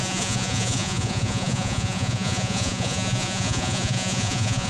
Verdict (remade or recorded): remade